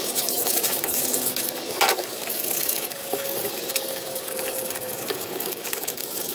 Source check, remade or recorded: remade